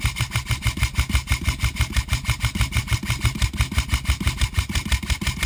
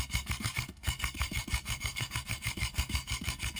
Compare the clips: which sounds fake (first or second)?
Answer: second